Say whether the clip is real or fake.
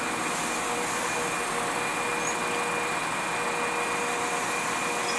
real